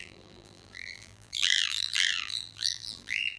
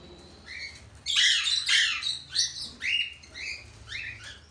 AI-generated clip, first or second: first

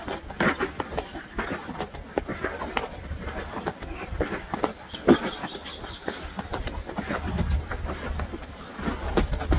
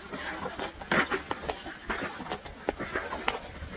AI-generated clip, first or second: first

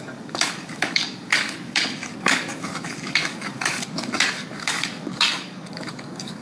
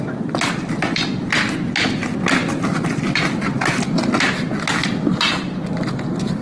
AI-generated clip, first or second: first